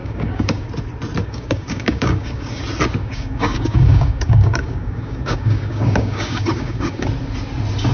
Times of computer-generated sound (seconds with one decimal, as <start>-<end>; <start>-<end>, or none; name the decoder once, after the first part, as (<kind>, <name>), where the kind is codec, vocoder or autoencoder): 0.0-0.7 (codec, DAC); 1.2-2.6; 3.0-7.1